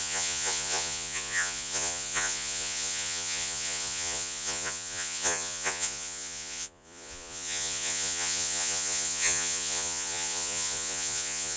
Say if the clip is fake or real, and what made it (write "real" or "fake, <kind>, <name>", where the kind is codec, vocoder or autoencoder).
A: fake, vocoder, Vocos